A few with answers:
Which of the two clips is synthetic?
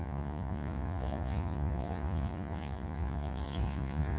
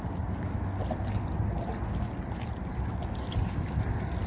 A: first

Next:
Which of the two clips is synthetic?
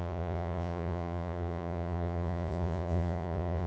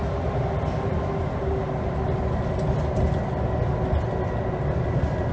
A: first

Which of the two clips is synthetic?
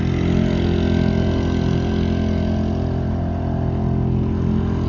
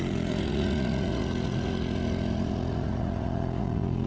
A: second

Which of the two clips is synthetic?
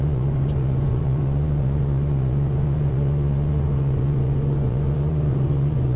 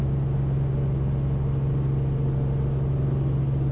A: first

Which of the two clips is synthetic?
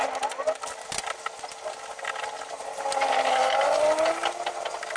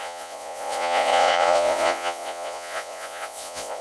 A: second